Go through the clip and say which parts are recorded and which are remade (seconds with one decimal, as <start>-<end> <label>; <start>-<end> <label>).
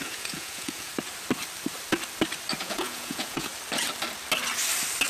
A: 0.0-0.9 remade; 0.9-2.6 recorded; 2.6-3.5 remade; 3.5-5.1 recorded